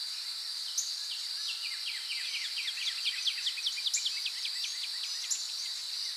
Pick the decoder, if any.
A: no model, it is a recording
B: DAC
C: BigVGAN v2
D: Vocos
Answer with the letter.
A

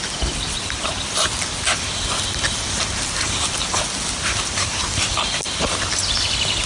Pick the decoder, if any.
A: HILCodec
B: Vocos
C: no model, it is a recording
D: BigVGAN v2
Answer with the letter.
D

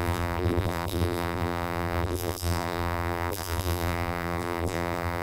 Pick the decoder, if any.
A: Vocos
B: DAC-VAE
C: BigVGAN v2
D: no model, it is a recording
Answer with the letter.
C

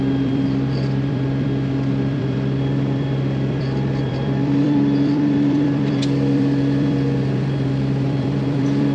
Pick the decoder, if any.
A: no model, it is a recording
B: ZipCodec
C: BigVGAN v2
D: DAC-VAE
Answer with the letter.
C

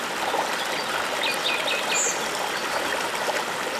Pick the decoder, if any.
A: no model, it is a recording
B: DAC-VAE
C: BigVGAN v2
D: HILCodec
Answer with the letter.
A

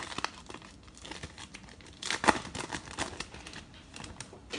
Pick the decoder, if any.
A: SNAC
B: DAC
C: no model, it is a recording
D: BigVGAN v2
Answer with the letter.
D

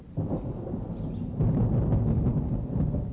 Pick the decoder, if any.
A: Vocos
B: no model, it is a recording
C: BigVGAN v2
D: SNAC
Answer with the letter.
B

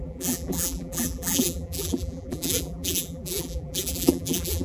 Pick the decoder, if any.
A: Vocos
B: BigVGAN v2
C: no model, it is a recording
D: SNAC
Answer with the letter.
B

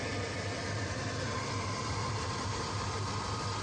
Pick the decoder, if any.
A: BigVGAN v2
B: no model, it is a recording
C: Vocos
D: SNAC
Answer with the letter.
A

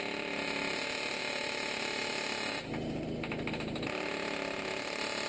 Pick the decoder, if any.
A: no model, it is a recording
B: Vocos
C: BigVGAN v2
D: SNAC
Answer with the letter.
A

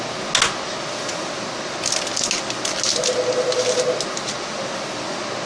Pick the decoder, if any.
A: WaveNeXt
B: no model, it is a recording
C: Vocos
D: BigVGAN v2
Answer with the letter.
B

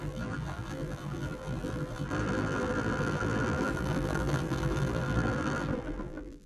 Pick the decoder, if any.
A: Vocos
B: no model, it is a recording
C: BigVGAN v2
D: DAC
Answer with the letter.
C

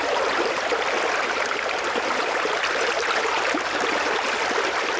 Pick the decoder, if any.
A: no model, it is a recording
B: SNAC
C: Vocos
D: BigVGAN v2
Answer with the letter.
D